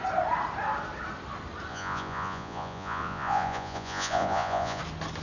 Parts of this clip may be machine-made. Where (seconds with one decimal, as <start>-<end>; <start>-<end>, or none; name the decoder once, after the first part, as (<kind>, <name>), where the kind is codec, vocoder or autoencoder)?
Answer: 1.7-4.8 (vocoder, Vocos)